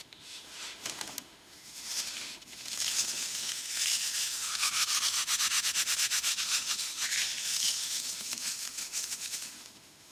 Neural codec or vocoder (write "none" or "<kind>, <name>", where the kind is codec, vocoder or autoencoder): autoencoder, DAC-VAE